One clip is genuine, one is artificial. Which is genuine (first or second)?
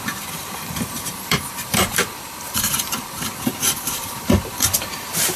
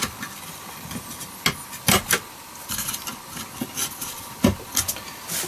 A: second